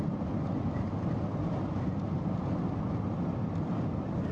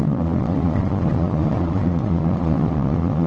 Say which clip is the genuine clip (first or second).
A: first